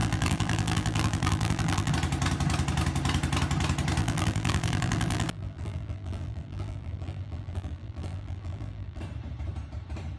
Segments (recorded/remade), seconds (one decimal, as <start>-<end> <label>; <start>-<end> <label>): 0.0-1.9 remade; 1.9-4.0 recorded; 4.0-9.0 remade; 9.0-10.2 recorded

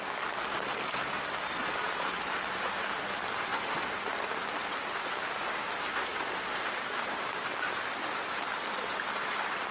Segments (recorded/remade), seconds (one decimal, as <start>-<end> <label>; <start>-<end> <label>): 0.0-1.6 recorded; 1.6-2.1 remade; 2.1-6.1 recorded; 6.1-8.5 remade; 8.5-9.7 recorded

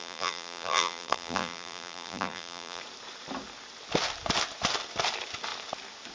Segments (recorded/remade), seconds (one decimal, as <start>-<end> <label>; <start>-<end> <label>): 0.0-2.8 remade; 2.8-6.1 recorded

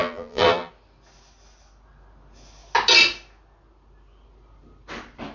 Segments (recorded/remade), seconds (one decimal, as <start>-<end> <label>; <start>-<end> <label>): 0.0-0.7 remade; 0.7-5.3 recorded

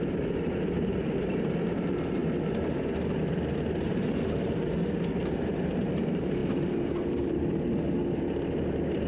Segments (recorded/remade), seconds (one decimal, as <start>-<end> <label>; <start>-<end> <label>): 0.0-2.2 remade; 2.2-3.7 recorded; 3.7-9.1 remade

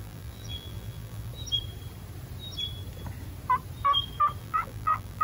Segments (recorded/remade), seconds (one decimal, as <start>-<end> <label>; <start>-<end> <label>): 0.0-1.3 remade; 1.3-4.4 recorded; 4.4-5.2 remade

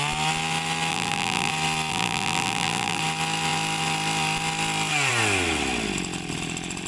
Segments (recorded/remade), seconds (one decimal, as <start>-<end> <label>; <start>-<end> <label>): 0.0-0.9 recorded; 0.9-1.5 remade; 1.5-1.9 recorded; 1.9-3.0 remade; 3.0-6.9 recorded

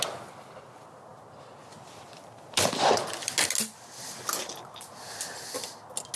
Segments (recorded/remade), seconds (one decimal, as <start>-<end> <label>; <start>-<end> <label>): 0.0-6.2 recorded